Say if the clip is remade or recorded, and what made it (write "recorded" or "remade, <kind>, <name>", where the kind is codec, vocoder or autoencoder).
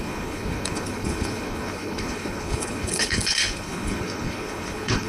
remade, codec, HILCodec